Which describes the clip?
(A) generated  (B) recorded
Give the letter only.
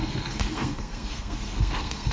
A